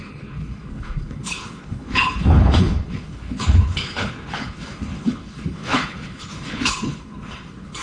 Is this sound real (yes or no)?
no